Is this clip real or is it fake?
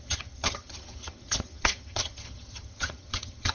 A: fake